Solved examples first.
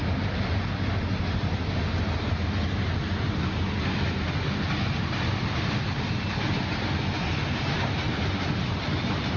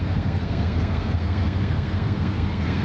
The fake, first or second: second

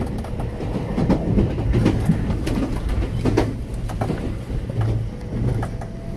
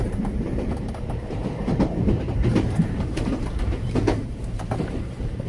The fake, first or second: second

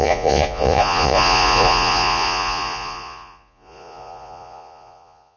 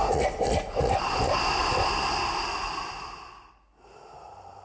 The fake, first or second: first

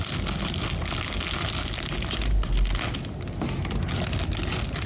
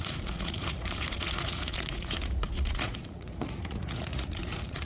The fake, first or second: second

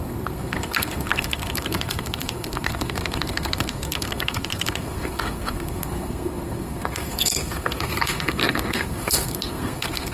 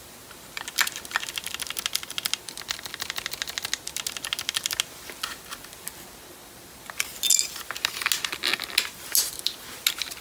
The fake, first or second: first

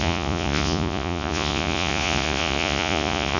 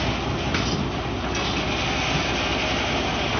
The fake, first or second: first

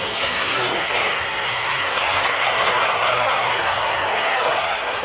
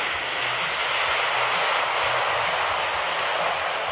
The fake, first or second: first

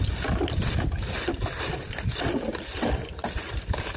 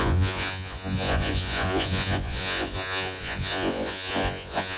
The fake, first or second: second